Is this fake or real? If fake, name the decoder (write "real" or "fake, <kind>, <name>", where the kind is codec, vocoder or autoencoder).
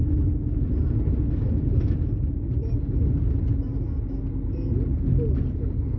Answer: real